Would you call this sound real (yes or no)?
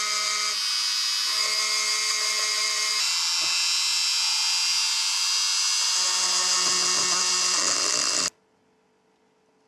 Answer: yes